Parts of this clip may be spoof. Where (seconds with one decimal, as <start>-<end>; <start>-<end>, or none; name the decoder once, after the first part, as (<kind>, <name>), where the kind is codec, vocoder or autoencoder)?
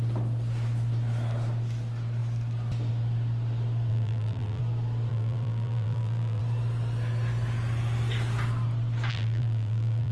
3.9-4.6 (vocoder, BigVGAN v2); 5.1-6.4; 9.1-10.1